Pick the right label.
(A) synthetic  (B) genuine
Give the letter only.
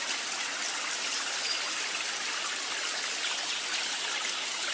B